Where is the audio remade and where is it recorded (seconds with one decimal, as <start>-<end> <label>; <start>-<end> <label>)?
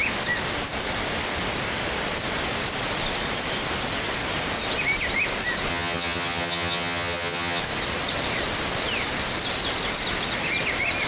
0.0-5.7 recorded; 5.7-7.6 remade; 7.6-11.1 recorded